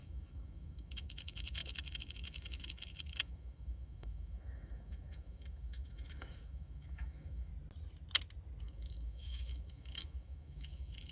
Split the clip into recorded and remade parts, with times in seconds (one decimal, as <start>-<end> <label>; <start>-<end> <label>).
0.0-7.5 remade; 7.5-8.6 recorded; 8.6-11.1 remade